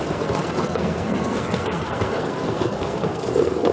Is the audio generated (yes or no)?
yes